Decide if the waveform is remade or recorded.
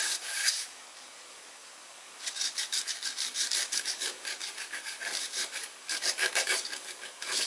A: remade